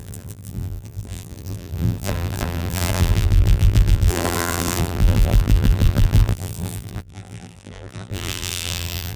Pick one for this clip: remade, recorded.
remade